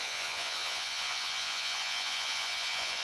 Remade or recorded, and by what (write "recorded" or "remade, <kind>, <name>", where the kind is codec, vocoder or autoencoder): remade, vocoder, Vocos